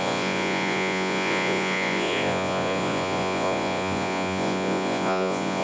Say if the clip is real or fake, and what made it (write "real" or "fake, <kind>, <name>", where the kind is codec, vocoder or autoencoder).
fake, vocoder, Vocos